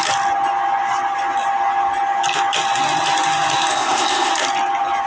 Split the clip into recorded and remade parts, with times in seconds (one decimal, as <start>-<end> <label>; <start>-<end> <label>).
0.0-3.7 recorded; 3.7-4.3 remade; 4.3-5.1 recorded